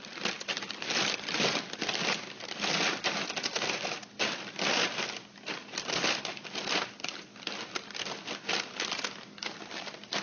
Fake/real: real